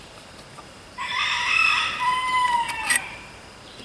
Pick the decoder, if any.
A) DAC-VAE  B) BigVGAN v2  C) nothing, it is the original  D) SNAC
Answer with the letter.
B